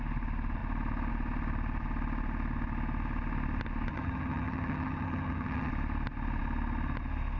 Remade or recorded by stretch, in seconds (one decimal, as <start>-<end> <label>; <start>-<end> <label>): 0.0-3.9 recorded; 3.9-5.7 remade; 5.7-7.4 recorded